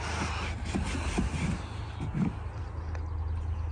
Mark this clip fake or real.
real